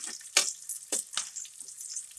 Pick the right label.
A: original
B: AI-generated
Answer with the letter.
A